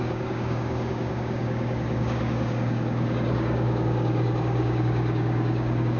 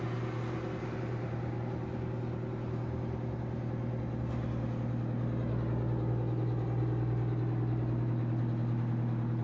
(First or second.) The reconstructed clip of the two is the first